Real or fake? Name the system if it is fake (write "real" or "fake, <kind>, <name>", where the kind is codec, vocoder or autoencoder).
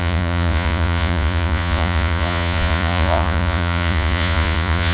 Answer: fake, vocoder, Vocos